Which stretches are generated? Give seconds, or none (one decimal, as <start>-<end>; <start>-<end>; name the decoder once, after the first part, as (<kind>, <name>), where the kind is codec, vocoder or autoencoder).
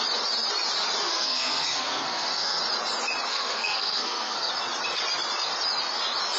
1.1-2.6 (codec, SNAC); 3.3-4.5